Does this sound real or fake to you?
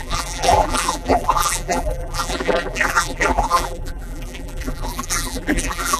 fake